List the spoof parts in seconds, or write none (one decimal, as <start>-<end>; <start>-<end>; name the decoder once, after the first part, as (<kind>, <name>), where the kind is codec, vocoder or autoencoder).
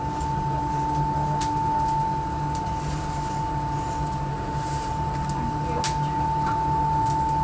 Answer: 4.3-4.9 (autoencoder, DAC-VAE)